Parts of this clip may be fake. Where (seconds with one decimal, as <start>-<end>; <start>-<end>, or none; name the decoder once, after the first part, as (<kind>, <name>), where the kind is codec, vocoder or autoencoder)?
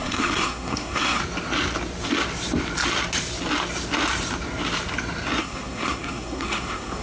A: 0.0-1.2 (codec, SNAC); 5.4-7.0